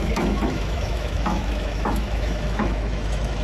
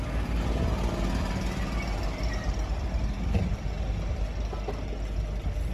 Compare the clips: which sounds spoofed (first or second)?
first